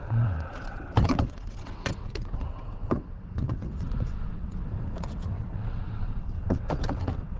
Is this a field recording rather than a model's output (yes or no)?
no